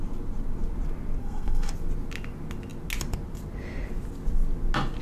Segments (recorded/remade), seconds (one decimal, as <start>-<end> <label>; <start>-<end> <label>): 0.0-1.2 recorded; 1.2-1.7 remade; 1.7-5.0 recorded